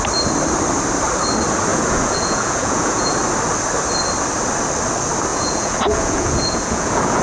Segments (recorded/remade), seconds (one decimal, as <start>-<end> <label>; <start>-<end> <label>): 0.0-1.7 recorded; 1.7-3.1 remade; 3.1-5.3 recorded; 5.3-7.2 remade